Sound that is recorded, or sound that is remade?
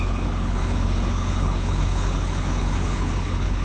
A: remade